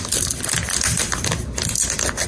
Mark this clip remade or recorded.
recorded